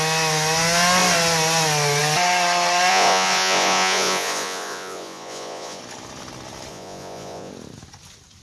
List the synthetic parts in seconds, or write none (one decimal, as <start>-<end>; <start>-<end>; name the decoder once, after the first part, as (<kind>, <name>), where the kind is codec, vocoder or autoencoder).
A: 2.9-5.8 (vocoder, Vocos); 6.7-7.5